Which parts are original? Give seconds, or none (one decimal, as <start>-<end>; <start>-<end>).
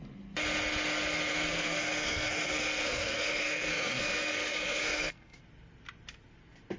0.0-1.3; 5.4-6.8